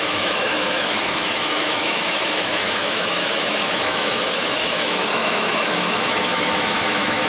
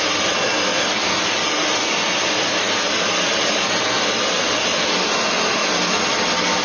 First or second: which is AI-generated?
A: first